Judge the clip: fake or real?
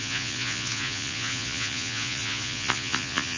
fake